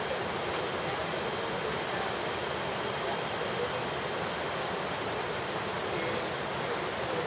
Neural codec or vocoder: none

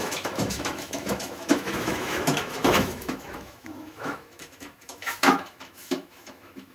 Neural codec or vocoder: autoencoder, DAC-VAE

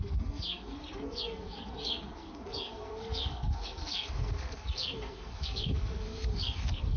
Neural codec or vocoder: codec, SNAC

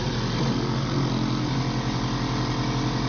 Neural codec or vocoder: none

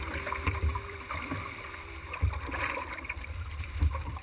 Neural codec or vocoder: vocoder, BigVGAN v2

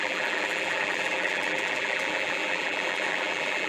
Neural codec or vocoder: vocoder, BigVGAN v2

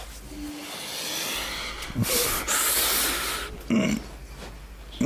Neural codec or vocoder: none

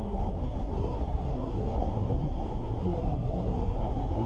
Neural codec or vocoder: codec, SNAC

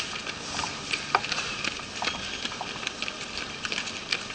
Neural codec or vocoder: none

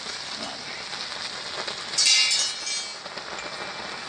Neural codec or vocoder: none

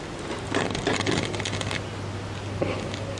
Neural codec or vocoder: none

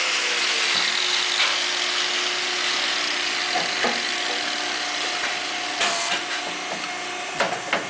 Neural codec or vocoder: none